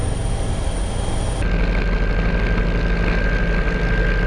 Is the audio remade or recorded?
recorded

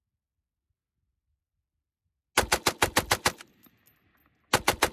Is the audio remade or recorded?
recorded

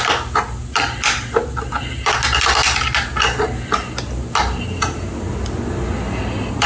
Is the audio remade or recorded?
recorded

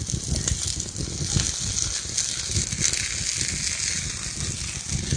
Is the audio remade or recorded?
recorded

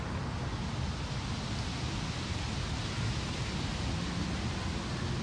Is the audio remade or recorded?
recorded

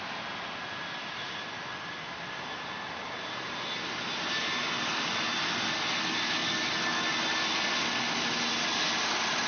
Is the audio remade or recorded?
recorded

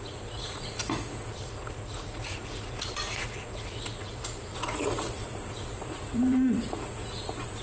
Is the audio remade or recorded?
remade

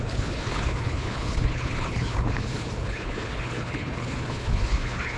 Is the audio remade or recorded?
remade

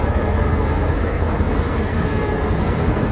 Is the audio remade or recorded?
remade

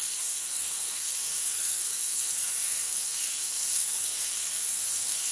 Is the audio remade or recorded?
remade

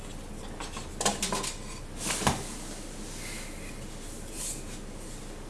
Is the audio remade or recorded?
recorded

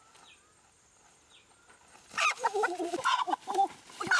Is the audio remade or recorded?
recorded